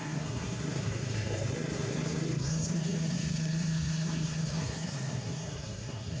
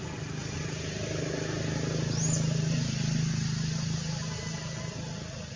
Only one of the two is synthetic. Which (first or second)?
first